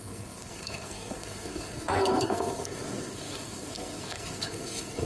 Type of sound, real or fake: fake